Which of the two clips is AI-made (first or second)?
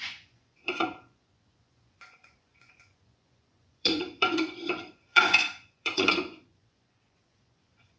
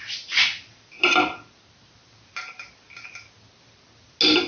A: first